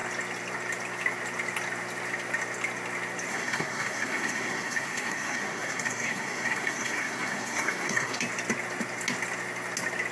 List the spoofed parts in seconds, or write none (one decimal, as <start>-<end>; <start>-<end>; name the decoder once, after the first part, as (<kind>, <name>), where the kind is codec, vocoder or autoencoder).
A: 3.3-8.2 (codec, SNAC)